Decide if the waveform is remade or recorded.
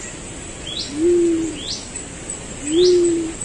recorded